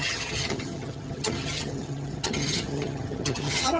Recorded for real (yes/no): no